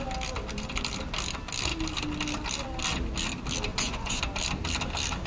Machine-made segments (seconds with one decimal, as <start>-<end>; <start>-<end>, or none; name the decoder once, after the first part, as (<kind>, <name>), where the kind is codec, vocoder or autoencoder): 3.7-4.2 (vocoder, Vocos)